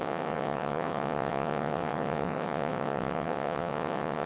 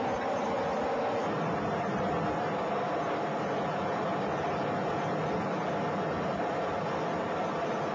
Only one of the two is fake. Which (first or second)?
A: first